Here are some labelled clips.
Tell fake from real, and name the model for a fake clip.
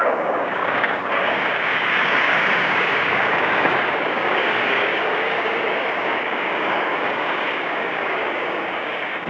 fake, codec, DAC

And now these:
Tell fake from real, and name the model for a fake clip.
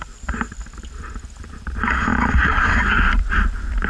real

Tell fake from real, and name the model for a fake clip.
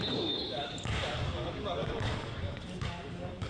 fake, codec, DAC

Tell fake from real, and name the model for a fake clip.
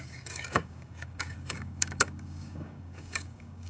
fake, codec, DAC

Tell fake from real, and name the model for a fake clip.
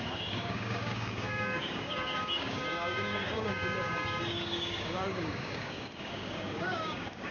fake, codec, DAC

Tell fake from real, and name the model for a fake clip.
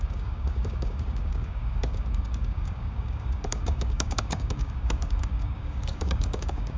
fake, codec, DAC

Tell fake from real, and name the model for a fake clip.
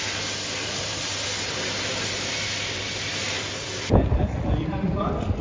real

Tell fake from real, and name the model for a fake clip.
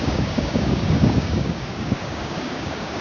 fake, codec, DAC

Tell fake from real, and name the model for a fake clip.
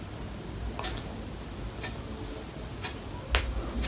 real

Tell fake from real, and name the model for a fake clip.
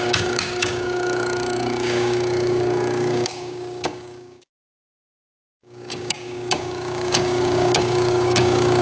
fake, codec, DAC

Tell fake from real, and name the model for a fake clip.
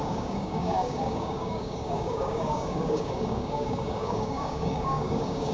fake, codec, DAC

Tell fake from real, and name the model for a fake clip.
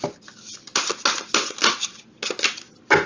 real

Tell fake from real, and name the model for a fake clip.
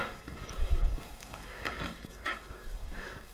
fake, codec, DAC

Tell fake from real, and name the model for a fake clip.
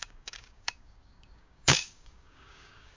fake, codec, DAC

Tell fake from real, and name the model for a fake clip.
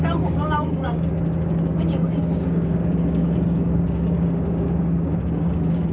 fake, codec, DAC